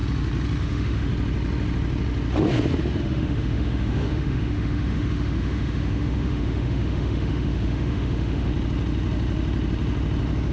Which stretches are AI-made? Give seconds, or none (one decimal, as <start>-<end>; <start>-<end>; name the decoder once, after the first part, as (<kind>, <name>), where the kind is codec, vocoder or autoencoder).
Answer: 0.6-1.1 (autoencoder, DAC-VAE); 3.0-8.5